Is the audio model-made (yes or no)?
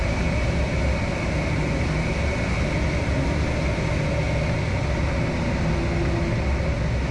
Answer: no